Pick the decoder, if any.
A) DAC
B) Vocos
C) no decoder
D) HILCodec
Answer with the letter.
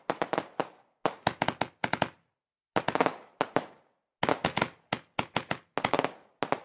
C